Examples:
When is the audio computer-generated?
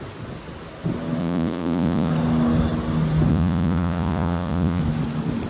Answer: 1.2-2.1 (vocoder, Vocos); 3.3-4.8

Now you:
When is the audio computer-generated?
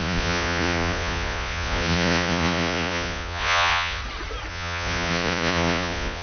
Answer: 0.0-4.0 (vocoder, Vocos); 4.5-6.2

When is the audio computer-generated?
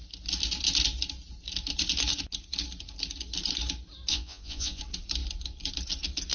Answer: 4.1-4.8 (vocoder, Vocos)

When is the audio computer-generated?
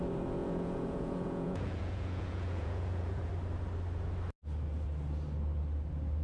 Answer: 0.4-3.3 (vocoder, Vocos)